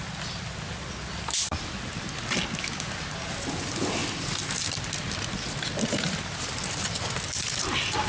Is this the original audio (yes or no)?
yes